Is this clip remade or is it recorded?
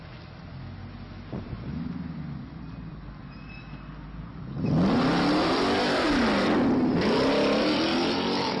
recorded